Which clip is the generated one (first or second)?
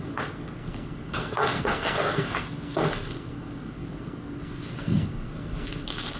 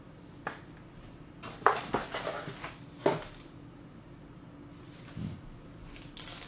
first